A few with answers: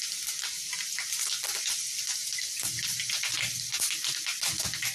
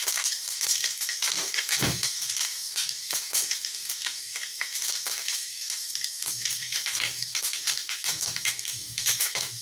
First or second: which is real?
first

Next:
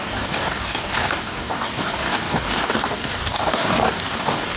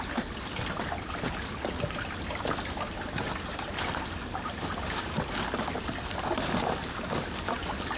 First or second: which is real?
second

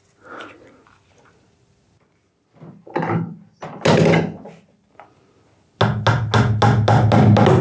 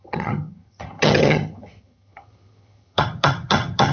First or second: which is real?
first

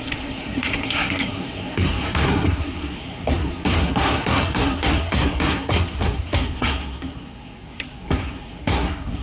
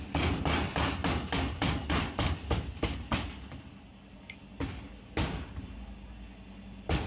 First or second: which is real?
second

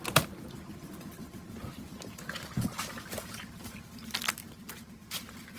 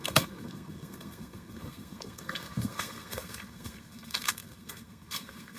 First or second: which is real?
first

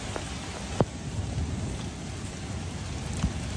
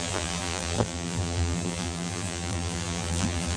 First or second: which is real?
first